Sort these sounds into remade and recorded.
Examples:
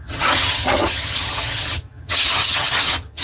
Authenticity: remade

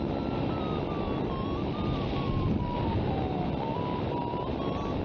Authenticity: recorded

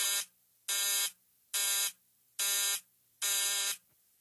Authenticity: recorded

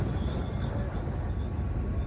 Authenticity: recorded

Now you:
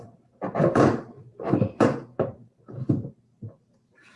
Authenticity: remade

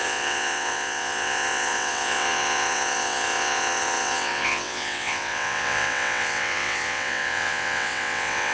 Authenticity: remade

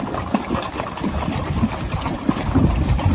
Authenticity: recorded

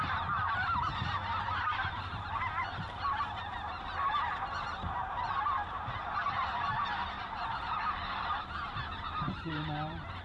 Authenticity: remade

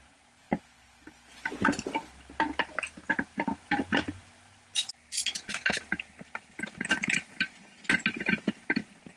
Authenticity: recorded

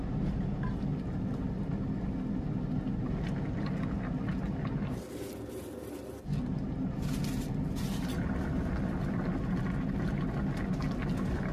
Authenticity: recorded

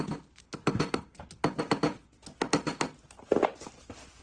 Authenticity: recorded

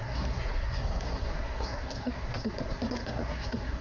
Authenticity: remade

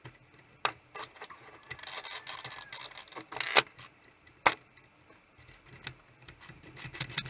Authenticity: recorded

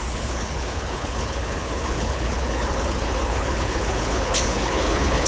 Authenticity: remade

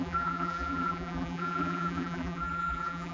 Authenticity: remade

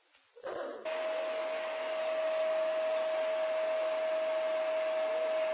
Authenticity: recorded